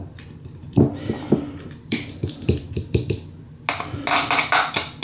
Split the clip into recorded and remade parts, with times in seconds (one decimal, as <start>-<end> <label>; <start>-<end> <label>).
0.0-0.6 recorded; 0.6-3.6 remade; 3.6-5.0 recorded